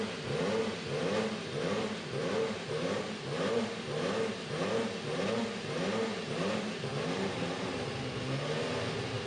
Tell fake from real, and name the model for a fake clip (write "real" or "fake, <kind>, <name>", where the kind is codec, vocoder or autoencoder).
real